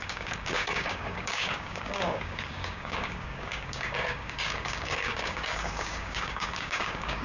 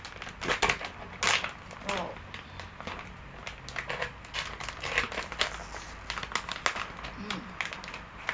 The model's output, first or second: first